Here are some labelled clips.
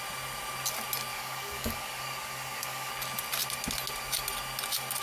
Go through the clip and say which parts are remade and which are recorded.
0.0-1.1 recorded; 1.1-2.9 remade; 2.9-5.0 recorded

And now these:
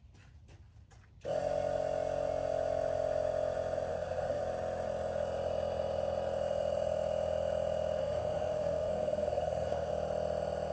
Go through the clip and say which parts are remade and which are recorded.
0.0-3.9 recorded; 3.9-4.4 remade; 4.4-8.0 recorded; 8.0-9.9 remade; 9.9-10.7 recorded

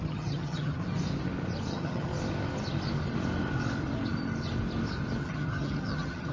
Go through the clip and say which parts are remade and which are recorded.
0.0-0.8 remade; 0.8-1.7 recorded; 1.7-2.1 remade; 2.1-5.2 recorded; 5.2-6.3 remade

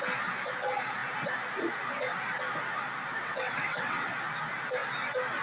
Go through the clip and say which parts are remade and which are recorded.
0.0-3.1 recorded; 3.1-4.1 remade; 4.1-5.4 recorded

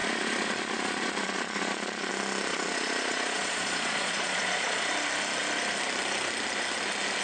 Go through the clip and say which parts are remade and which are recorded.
0.0-2.1 remade; 2.1-2.5 recorded; 2.5-4.9 remade; 4.9-7.2 recorded

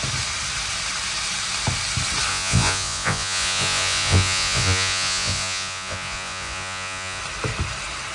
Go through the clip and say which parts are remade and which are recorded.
0.0-2.3 recorded; 2.3-7.2 remade; 7.2-8.1 recorded

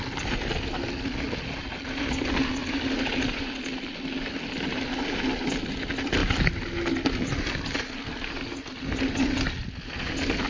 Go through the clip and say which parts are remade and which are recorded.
0.0-10.5 recorded

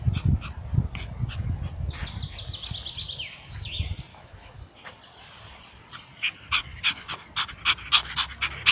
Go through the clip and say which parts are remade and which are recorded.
0.0-4.1 recorded; 4.1-4.6 remade; 4.6-8.7 recorded